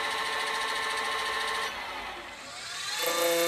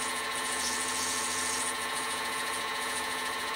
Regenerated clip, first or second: second